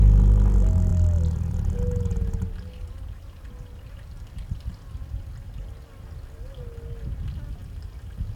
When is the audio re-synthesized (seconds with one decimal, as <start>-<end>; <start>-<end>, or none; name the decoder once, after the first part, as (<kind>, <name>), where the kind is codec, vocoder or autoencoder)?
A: none